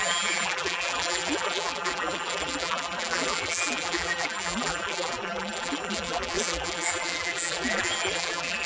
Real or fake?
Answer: fake